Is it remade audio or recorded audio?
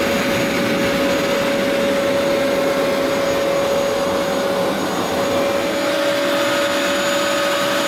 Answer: recorded